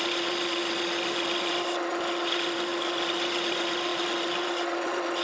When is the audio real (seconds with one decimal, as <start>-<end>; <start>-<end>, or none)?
0.0-5.2